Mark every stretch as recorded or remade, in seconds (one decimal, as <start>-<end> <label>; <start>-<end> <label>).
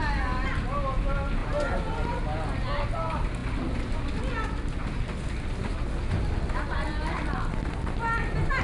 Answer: 0.0-8.6 recorded